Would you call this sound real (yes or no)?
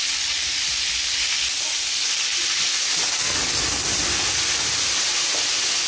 yes